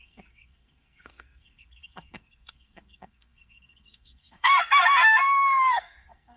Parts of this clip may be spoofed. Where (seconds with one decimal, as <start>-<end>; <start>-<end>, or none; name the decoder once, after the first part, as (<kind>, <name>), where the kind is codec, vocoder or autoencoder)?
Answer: 0.0-6.4 (codec, SNAC)